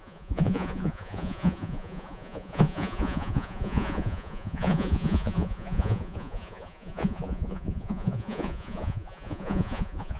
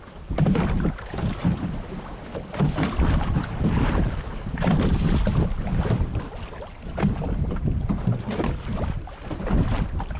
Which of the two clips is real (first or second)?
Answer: second